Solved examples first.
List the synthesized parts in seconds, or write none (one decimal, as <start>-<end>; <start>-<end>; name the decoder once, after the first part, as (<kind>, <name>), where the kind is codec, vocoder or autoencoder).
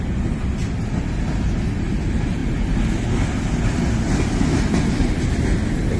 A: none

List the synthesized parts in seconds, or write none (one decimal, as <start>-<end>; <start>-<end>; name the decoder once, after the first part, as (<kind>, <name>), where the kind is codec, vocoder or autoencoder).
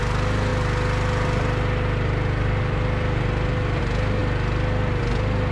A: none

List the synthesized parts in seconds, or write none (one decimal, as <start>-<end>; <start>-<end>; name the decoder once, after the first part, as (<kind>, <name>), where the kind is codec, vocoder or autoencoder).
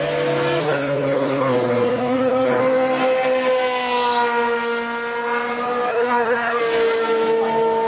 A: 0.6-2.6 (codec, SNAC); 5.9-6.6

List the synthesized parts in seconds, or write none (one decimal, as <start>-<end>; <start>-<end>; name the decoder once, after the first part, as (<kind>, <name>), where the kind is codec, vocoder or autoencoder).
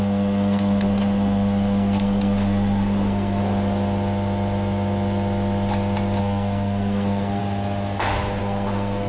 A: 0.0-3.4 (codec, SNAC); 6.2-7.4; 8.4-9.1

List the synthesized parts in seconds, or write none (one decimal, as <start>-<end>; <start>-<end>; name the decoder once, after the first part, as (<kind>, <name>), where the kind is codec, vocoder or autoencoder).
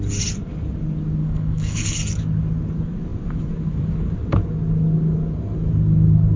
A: 1.2-2.0 (codec, SNAC)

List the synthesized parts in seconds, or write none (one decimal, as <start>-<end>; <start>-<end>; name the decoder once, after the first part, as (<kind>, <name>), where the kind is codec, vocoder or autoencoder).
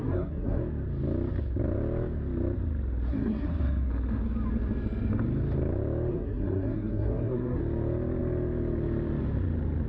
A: 0.0-0.6 (codec, SNAC); 3.1-3.9; 6.1-7.6